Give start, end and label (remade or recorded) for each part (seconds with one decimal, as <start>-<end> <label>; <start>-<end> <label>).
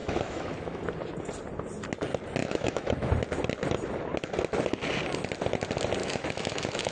0.0-0.8 remade; 0.8-2.4 recorded; 2.4-3.1 remade; 3.1-6.0 recorded; 6.0-6.9 remade